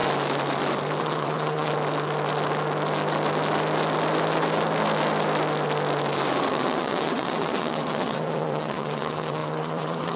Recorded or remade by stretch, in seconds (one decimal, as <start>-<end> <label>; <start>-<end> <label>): 0.0-1.0 recorded; 1.0-1.7 remade; 1.7-6.5 recorded; 6.5-10.2 remade